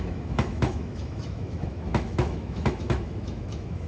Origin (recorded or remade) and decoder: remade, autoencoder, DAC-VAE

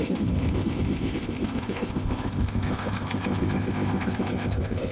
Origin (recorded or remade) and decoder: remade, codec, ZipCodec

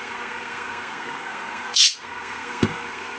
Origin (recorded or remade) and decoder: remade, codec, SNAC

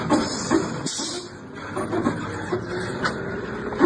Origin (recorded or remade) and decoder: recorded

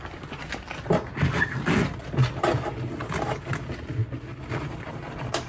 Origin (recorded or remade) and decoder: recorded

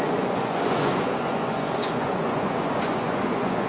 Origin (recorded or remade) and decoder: remade, vocoder, Vocos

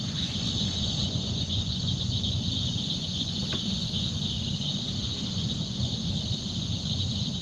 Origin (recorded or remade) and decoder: remade, vocoder, Vocos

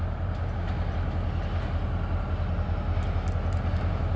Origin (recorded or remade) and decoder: recorded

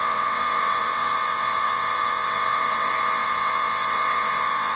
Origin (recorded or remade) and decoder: remade, vocoder, WaveNeXt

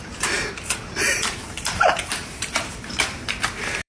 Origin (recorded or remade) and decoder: remade, vocoder, BigVGAN v2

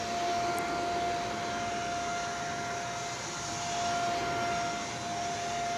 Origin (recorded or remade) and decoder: recorded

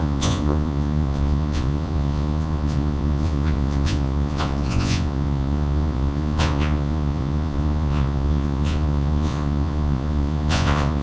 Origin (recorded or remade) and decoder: remade, vocoder, Vocos